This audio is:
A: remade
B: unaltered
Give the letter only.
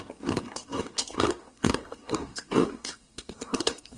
A